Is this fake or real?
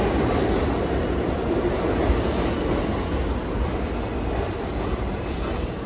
real